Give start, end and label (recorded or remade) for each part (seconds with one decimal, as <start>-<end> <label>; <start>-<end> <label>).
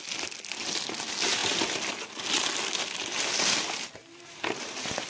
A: 0.0-5.1 recorded